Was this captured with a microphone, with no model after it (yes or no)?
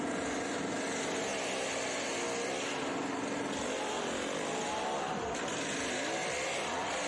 yes